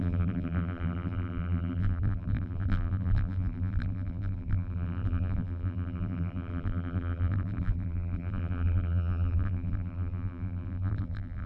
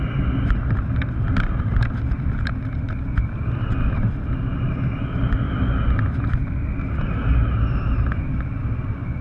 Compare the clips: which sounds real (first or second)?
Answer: second